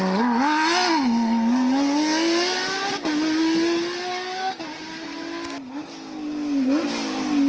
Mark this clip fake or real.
real